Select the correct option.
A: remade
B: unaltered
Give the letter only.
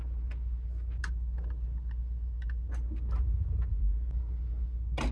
B